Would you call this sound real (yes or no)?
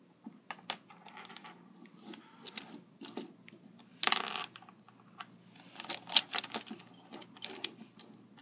yes